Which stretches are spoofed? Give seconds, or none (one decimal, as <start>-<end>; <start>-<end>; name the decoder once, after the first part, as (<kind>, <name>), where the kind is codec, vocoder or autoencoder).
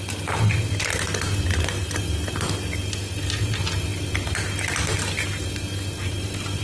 none